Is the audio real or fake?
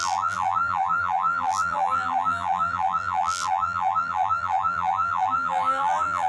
fake